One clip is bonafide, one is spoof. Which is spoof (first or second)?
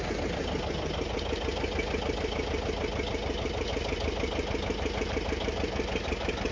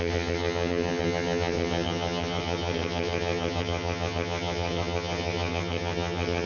second